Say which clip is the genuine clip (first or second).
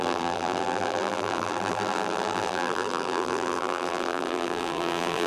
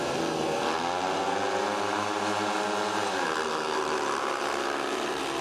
second